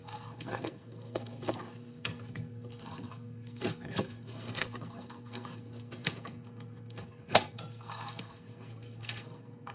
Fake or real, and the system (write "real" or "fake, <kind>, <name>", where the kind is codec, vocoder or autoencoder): fake, codec, SNAC